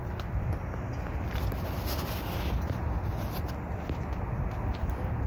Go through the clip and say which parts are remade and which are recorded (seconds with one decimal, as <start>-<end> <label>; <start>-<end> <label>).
0.0-5.3 recorded